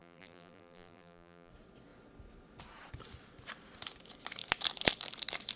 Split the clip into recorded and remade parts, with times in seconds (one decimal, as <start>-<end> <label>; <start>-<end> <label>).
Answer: 0.0-1.5 remade; 1.5-5.6 recorded